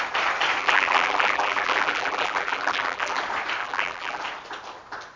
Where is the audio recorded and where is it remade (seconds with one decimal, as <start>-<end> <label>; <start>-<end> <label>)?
0.0-0.6 recorded; 0.6-3.2 remade; 3.2-3.6 recorded; 3.6-4.2 remade; 4.2-5.2 recorded